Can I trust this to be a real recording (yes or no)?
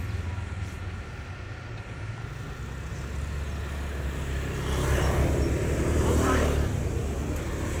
yes